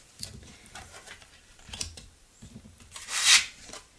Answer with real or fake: fake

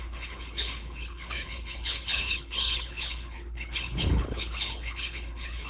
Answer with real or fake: fake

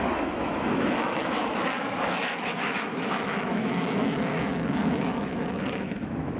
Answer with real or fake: fake